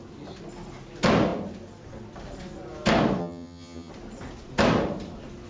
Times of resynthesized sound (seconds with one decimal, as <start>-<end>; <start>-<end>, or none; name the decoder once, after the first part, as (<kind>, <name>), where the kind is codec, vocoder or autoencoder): 3.2-3.9 (vocoder, HiFi-GAN)